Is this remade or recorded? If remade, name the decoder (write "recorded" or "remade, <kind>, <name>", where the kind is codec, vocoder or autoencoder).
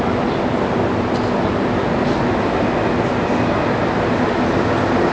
recorded